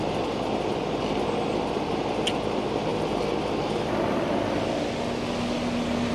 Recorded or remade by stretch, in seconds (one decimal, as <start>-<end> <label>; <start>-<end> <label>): 0.0-6.1 recorded